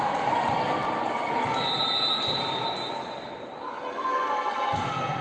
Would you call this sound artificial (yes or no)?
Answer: no